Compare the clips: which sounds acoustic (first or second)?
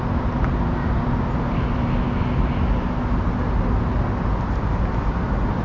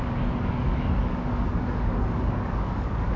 first